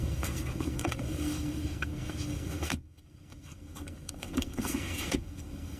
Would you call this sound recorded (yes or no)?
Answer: no